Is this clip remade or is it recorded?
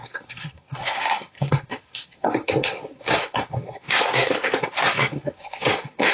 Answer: remade